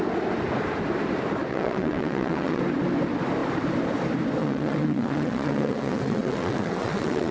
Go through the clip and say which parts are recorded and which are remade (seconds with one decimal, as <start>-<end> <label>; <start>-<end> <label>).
0.0-1.5 recorded; 1.5-2.6 remade; 2.6-4.4 recorded; 4.4-7.3 remade